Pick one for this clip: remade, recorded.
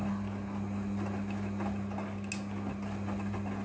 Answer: recorded